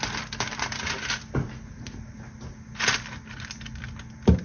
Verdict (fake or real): real